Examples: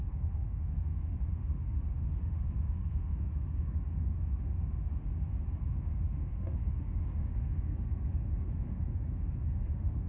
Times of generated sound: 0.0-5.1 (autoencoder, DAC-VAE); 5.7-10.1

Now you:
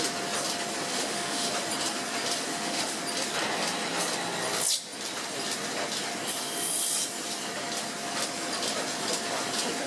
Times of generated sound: 0.9-1.5 (autoencoder, DAC-VAE); 2.5-3.0